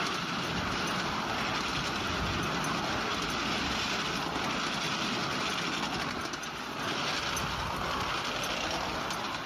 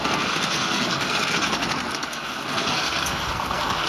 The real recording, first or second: first